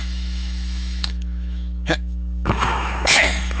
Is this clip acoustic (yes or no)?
no